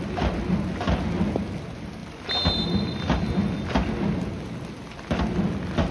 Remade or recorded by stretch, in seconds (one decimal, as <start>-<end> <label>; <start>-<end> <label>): 0.0-5.9 recorded